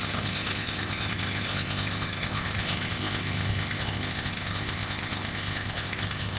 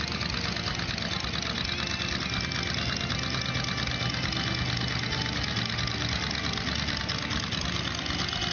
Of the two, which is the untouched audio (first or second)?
second